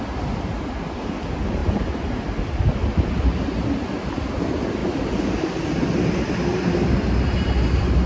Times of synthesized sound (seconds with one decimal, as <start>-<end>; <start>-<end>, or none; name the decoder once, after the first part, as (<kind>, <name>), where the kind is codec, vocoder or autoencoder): 4.8-5.4 (vocoder, BigVGAN v2); 6.5-7.5